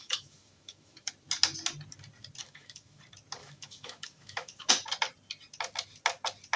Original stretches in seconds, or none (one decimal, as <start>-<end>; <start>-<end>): 1.1-2.4; 3.0-3.4; 4.7-6.6